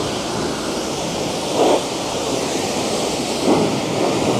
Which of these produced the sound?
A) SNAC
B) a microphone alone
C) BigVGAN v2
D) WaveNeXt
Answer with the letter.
C